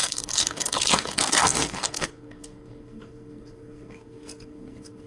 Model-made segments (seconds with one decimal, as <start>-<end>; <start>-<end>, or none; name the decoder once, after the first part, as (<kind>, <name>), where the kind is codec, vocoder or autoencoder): 0.0-5.1 (codec, SNAC)